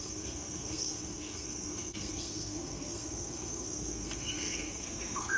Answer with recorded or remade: remade